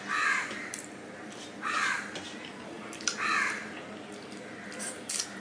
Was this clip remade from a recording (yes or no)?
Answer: no